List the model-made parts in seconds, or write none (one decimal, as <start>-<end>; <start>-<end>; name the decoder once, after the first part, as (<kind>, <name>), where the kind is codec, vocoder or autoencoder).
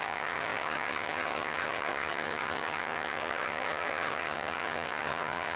0.0-5.6 (vocoder, HiFi-GAN)